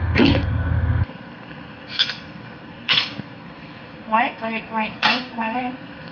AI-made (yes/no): yes